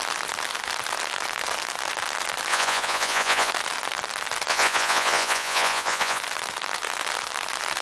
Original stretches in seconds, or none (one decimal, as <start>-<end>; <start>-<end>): 0.0-2.5; 3.5-4.5; 6.2-7.8